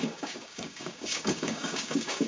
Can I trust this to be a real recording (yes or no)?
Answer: no